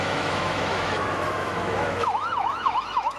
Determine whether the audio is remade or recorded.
remade